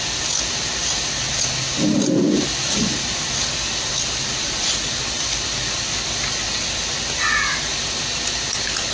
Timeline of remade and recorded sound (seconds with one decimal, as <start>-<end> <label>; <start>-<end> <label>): 0.0-4.4 recorded; 4.4-5.0 remade; 5.0-8.9 recorded